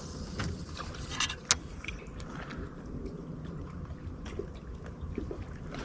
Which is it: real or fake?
real